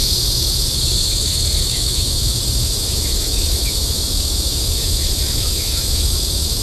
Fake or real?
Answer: fake